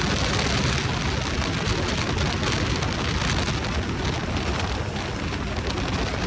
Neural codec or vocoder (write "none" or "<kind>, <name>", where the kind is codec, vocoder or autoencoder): none